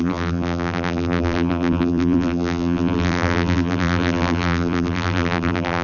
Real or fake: fake